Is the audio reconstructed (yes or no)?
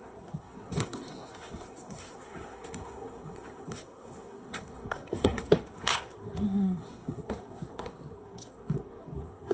yes